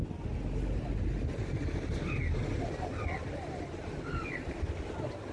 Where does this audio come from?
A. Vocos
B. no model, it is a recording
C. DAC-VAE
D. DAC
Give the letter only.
B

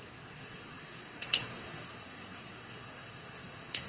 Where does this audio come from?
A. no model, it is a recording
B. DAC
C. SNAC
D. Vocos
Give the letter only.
C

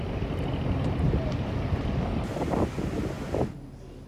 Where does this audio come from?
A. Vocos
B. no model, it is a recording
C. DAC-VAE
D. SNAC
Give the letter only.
B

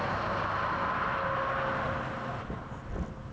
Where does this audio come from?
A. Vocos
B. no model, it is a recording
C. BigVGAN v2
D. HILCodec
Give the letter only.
B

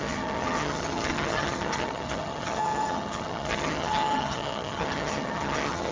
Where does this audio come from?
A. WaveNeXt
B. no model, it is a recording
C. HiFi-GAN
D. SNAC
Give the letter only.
C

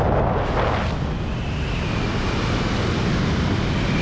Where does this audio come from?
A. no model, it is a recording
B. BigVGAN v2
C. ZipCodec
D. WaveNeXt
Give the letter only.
A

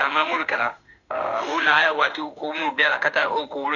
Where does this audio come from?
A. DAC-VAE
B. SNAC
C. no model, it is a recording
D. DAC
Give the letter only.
A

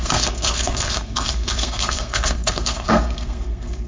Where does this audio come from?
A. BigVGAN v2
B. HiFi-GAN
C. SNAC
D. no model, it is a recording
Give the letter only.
C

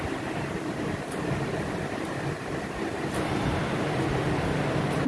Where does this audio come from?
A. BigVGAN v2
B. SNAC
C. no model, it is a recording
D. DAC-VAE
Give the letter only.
C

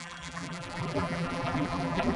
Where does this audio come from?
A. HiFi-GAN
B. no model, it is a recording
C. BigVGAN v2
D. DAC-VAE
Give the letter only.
C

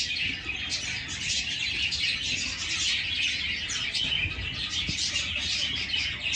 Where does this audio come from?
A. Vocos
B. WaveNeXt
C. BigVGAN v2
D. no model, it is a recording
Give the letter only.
D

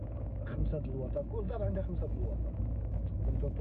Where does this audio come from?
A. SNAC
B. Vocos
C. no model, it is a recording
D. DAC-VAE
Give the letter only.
D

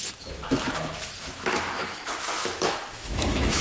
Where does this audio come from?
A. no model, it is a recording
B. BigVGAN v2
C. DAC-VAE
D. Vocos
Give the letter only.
C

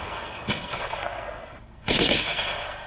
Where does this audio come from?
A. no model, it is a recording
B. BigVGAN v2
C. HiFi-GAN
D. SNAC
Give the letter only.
D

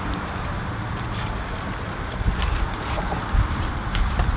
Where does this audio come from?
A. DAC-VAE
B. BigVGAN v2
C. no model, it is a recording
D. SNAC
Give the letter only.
B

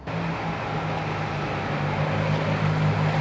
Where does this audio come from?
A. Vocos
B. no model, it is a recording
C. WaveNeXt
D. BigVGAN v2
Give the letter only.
B